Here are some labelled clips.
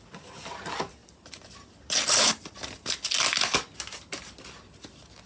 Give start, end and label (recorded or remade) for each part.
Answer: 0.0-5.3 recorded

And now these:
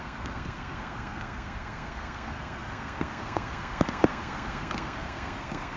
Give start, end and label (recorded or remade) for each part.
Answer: 0.0-5.8 remade

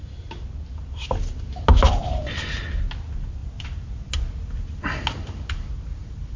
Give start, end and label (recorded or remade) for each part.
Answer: 0.0-6.4 recorded

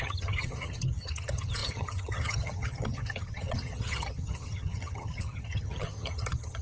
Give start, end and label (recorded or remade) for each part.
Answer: 0.0-6.6 remade

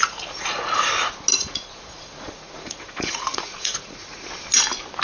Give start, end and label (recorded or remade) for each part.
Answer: 0.0-0.8 remade; 0.8-1.3 recorded; 1.3-4.3 remade; 4.3-5.0 recorded

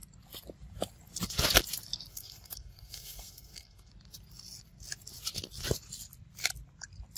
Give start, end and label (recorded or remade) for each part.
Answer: 0.0-2.1 recorded; 2.1-3.9 remade; 3.9-7.2 recorded